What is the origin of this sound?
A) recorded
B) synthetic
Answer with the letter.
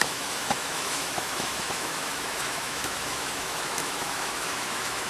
B